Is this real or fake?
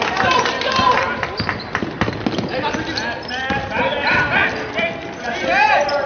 real